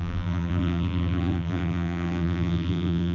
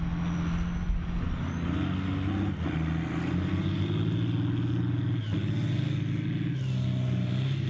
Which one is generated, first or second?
first